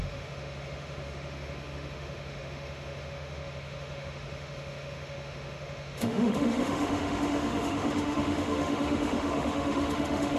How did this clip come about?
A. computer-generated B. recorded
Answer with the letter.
A